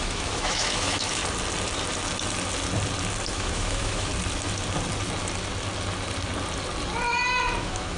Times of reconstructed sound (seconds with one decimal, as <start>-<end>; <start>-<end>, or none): 0.0-1.2; 3.3-4.1; 7.6-8.0